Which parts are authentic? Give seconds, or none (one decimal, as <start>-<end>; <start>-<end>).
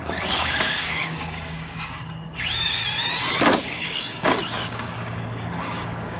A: 2.8-3.6